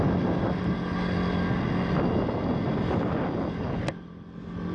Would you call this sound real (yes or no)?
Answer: yes